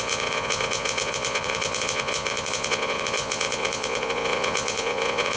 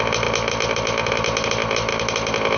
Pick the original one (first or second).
second